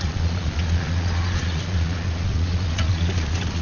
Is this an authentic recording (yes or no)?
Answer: no